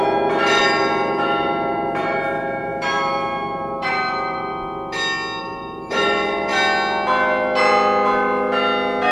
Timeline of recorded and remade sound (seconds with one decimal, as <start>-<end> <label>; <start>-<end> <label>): 0.0-4.5 remade; 4.5-5.4 recorded; 5.4-6.5 remade; 6.5-9.1 recorded